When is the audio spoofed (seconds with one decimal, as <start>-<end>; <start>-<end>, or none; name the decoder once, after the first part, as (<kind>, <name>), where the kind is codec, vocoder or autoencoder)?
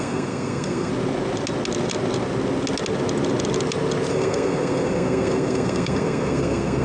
0.0-0.9 (codec, SNAC); 4.1-6.8